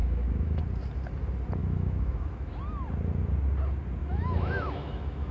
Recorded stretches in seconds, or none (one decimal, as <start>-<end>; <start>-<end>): 0.6-1.6; 2.6-4.0

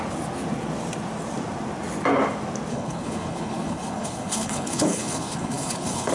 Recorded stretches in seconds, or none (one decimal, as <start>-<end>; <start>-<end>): 0.0-2.7

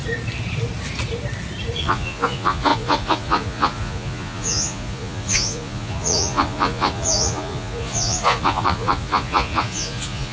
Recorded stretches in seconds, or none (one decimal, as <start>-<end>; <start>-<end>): 0.0-1.8

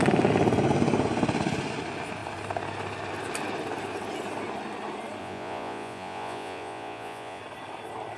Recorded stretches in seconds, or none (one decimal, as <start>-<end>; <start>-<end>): 0.0-5.2; 7.4-8.2

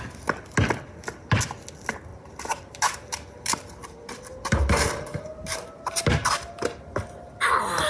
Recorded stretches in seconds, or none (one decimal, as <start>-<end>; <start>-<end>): 0.0-2.1; 4.1-5.1; 6.3-7.9